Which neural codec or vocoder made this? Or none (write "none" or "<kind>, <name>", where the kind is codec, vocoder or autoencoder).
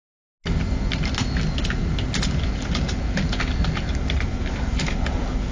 none